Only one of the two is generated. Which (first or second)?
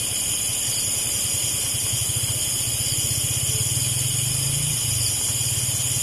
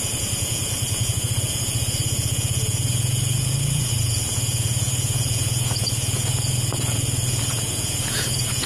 second